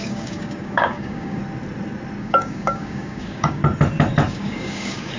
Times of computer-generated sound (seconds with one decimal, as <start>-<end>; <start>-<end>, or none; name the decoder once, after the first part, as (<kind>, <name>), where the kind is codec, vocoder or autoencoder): 0.0-1.4 (codec, DAC); 2.2-3.6; 4.3-5.2